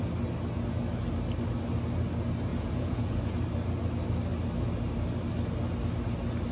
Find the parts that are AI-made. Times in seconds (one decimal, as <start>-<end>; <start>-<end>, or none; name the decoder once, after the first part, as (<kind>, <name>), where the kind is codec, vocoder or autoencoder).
2.5-3.4 (vocoder, Vocos)